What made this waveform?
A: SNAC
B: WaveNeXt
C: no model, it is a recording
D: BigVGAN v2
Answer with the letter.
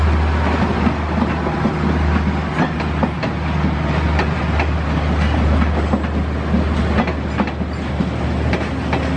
C